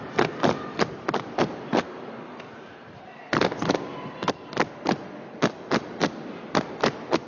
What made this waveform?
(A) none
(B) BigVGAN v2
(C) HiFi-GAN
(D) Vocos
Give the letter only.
A